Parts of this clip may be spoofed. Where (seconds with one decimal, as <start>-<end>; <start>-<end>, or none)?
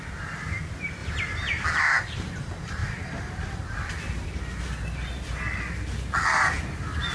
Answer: none